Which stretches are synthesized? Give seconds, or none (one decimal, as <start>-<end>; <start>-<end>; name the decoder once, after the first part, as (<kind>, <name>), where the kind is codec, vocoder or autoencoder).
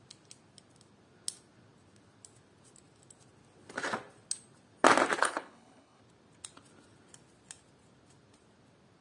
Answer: 5.2-6.0 (codec, HILCodec)